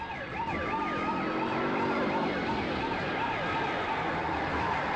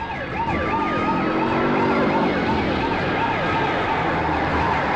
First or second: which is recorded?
second